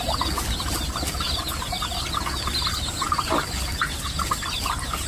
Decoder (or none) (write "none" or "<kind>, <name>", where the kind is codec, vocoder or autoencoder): none